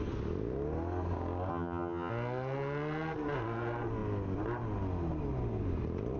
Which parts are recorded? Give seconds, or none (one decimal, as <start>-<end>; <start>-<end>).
0.0-1.5; 2.1-6.2